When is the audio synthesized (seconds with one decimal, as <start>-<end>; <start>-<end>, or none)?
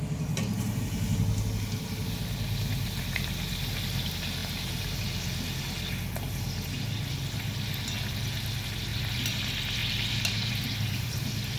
4.4-4.9; 8.9-9.4; 9.8-11.6